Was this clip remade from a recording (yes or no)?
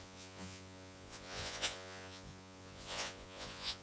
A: yes